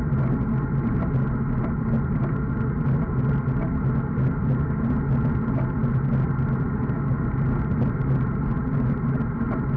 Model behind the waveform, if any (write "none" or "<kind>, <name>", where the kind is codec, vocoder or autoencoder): none